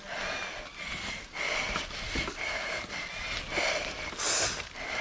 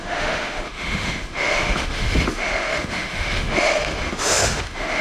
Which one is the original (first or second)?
first